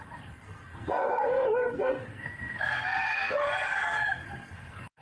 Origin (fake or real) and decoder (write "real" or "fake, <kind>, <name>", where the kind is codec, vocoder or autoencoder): fake, codec, SNAC